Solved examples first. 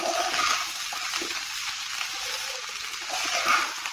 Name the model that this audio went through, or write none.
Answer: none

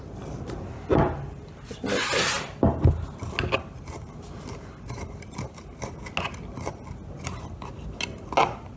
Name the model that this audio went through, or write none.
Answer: none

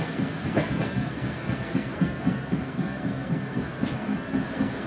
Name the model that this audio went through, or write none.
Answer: codec, SNAC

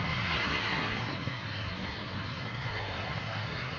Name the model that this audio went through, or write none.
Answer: codec, SNAC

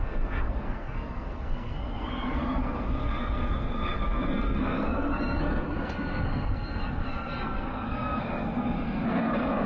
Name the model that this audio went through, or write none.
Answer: codec, SNAC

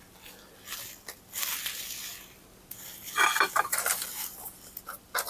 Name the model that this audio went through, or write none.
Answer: none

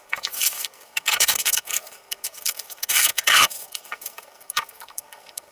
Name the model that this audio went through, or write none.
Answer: codec, SNAC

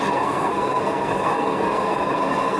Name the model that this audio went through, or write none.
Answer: codec, SNAC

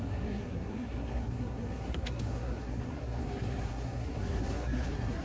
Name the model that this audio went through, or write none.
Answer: codec, SNAC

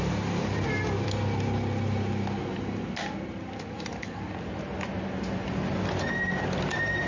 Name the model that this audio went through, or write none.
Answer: none